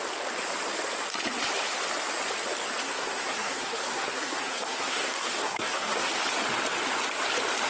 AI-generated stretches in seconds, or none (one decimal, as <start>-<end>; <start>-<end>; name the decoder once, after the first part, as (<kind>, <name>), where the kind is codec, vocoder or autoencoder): 2.8-6.1 (codec, SNAC)